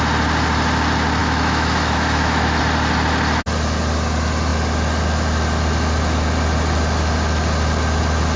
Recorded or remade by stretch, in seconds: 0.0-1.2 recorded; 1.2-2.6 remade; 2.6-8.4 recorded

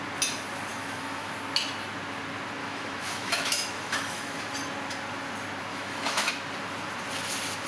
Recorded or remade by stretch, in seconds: 0.0-0.7 recorded; 0.7-1.3 remade; 1.3-2.6 recorded; 2.6-4.5 remade; 4.5-5.7 recorded; 5.7-6.3 remade; 6.3-7.7 recorded

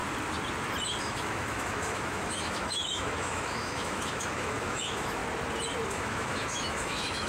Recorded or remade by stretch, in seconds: 0.0-1.0 recorded; 1.0-5.2 remade; 5.2-5.9 recorded; 5.9-7.3 remade

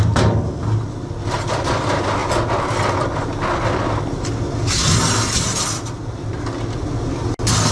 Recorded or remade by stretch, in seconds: 0.0-7.7 recorded